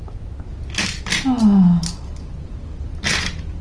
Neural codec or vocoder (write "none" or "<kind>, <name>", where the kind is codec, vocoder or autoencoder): none